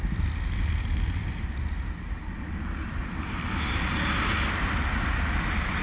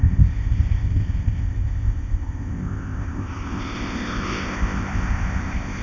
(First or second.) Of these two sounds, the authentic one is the first